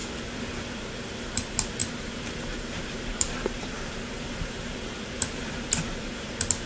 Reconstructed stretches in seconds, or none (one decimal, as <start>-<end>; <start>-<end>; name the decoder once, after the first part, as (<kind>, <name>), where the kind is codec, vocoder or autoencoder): 1.8-4.9 (vocoder, BigVGAN v2)